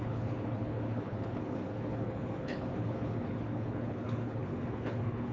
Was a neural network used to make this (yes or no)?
yes